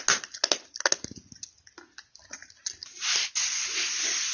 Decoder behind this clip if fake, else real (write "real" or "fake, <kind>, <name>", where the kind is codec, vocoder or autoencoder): real